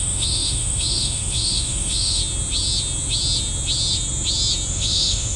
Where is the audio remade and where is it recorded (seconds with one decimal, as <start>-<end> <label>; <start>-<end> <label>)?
0.0-2.2 remade; 2.2-4.7 recorded; 4.7-5.4 remade